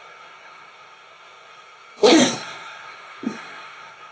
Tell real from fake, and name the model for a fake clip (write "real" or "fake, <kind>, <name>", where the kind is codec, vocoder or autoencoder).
fake, codec, SNAC